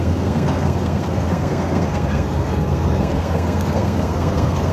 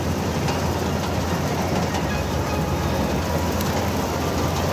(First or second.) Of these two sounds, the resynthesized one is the first